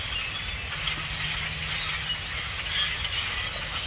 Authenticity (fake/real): real